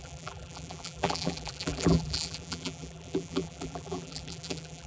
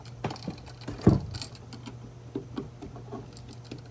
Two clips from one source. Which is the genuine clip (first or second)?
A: second